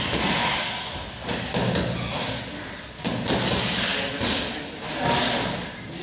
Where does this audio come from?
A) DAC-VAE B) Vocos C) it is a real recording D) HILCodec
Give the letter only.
C